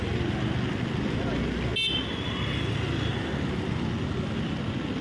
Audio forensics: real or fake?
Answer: real